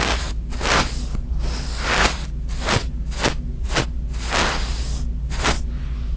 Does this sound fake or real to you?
real